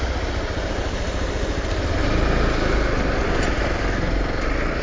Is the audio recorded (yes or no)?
yes